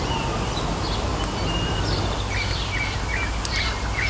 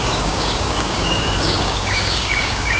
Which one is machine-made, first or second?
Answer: second